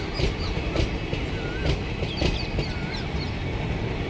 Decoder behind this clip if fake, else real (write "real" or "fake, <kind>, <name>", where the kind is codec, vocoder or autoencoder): real